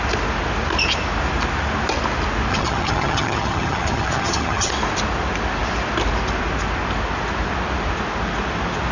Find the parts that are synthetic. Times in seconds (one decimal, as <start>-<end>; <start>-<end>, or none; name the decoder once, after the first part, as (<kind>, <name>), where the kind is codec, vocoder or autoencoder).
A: 2.5-4.7 (vocoder, HiFi-GAN)

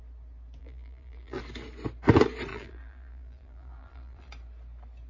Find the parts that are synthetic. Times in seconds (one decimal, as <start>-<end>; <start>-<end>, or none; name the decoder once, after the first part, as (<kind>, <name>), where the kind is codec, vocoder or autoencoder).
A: 0.6-1.4 (vocoder, BigVGAN v2); 2.5-4.3

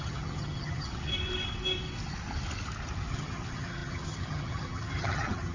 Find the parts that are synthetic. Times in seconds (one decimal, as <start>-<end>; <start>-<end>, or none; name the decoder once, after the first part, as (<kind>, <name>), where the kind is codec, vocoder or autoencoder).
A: 0.0-1.1 (vocoder, HiFi-GAN); 3.1-5.5

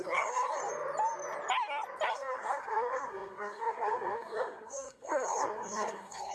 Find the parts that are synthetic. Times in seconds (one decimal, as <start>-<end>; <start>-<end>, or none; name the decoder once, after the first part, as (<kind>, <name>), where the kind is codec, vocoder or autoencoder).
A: 0.0-0.6 (codec, SNAC); 2.1-6.3

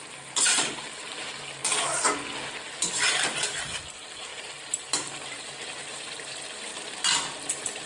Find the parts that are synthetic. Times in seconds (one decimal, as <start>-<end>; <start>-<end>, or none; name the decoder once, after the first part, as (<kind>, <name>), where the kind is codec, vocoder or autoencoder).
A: 0.0-1.6 (vocoder, BigVGAN v2); 2.5-6.7; 7.5-7.9